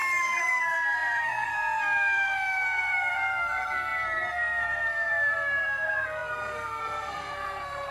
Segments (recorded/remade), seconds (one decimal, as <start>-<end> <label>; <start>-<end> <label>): 0.0-7.9 remade